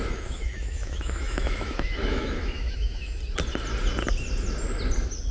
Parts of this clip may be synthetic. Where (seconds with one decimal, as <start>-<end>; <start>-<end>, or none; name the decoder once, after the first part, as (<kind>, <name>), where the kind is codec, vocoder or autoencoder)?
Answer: 0.0-3.2 (autoencoder, DAC-VAE)